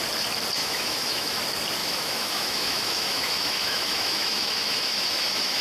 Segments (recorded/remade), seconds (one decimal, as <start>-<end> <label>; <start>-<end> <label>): 0.0-0.6 recorded; 0.6-1.4 remade; 1.4-1.8 recorded; 1.8-5.6 remade